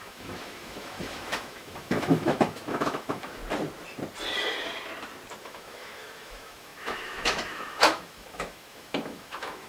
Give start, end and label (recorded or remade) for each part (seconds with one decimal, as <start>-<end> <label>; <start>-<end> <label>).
0.0-3.4 remade; 3.4-5.4 recorded; 5.4-9.7 remade